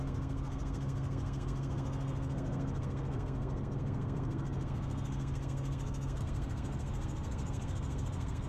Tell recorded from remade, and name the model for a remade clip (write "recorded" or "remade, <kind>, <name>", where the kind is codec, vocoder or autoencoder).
remade, codec, SNAC